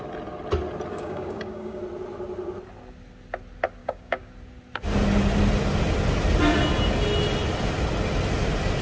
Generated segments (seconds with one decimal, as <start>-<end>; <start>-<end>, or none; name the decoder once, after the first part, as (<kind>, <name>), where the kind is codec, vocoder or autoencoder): 0.9-1.8 (codec, DAC); 3.8-4.3